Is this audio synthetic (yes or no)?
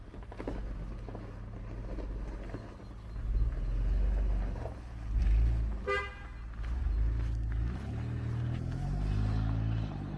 no